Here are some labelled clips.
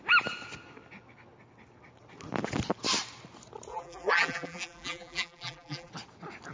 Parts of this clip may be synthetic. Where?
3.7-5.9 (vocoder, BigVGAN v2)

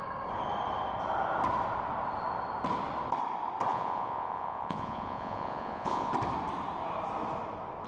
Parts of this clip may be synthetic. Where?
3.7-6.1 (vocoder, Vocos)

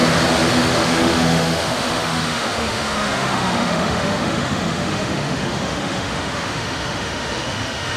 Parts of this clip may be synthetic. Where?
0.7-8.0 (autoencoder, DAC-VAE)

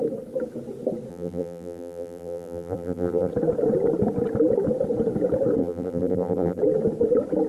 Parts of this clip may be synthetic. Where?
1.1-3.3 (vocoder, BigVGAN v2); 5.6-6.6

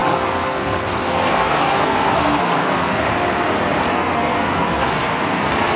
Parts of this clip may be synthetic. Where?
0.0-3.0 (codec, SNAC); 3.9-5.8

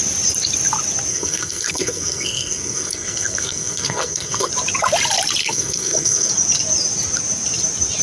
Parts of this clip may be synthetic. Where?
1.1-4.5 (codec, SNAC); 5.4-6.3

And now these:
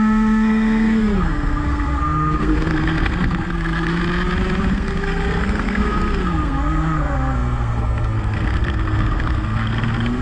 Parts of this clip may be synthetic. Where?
0.0-4.0 (codec, SNAC); 4.7-10.2

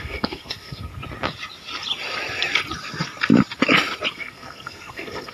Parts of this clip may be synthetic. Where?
0.0-0.9 (codec, SNAC); 4.1-5.3